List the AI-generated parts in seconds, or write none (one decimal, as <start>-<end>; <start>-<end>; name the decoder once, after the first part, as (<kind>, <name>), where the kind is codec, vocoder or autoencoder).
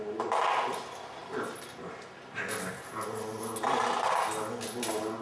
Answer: none